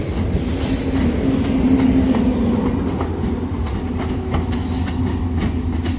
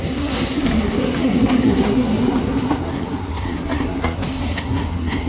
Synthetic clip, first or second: second